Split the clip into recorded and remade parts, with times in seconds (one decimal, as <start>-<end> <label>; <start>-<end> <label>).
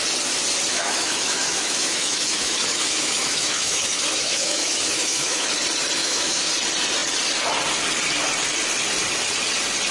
0.0-0.7 recorded; 0.7-5.5 remade; 5.5-6.0 recorded; 6.0-6.5 remade; 6.5-9.9 recorded